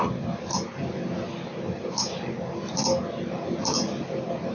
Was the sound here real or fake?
real